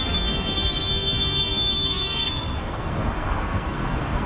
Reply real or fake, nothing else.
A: fake